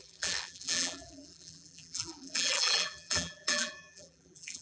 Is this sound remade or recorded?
remade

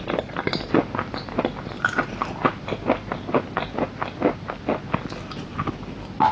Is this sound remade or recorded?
recorded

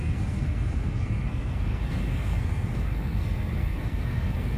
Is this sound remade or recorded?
remade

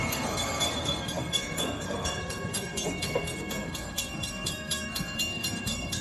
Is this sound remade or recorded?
remade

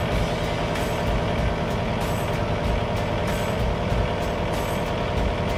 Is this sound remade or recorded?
recorded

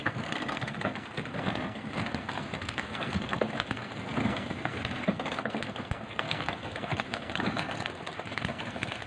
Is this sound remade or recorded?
remade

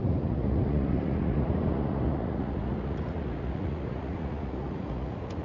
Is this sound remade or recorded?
remade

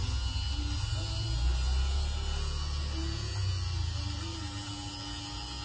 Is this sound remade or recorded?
recorded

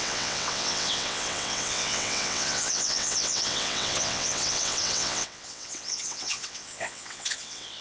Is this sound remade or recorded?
remade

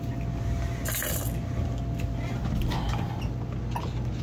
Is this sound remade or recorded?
recorded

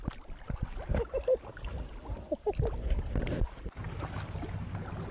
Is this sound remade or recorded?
recorded